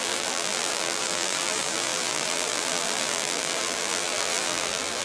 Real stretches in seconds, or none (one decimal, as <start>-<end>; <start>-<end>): none